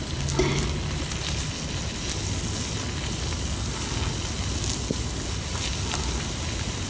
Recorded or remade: recorded